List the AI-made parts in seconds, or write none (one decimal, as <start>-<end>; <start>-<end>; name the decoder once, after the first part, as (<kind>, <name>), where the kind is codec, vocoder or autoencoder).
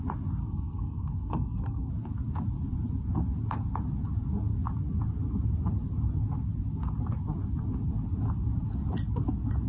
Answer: 0.4-1.9 (codec, SNAC)